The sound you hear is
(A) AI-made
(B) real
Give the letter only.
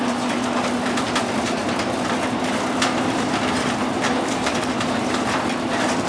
A